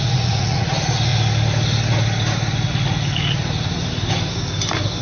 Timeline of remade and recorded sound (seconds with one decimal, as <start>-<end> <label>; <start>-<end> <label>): 0.0-0.7 remade; 0.7-5.0 recorded